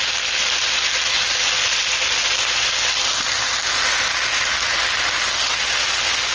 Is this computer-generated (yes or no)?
no